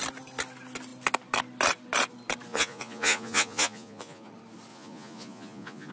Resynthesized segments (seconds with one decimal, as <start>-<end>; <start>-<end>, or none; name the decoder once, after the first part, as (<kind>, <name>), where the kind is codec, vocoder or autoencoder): 2.5-4.3 (vocoder, Vocos); 4.7-5.9

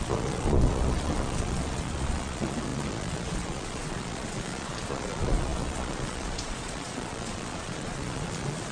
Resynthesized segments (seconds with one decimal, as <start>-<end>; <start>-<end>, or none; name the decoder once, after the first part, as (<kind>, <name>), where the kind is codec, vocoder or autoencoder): 0.0-8.7 (vocoder, Vocos)

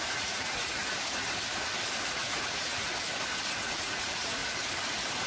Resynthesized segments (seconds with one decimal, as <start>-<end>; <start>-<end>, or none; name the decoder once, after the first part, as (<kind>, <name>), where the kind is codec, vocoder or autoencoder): 0.0-0.8 (vocoder, Vocos); 2.1-2.9; 3.6-4.4